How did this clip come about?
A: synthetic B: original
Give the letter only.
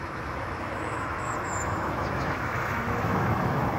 A